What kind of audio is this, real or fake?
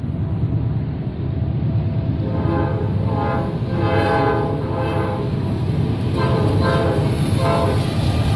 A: real